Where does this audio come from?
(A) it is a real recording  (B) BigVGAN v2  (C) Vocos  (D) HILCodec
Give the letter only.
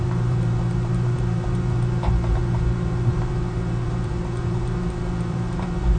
B